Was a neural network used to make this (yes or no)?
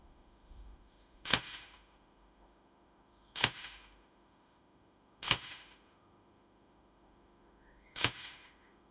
yes